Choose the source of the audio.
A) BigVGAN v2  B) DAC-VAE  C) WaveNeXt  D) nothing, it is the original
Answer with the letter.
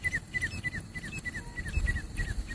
D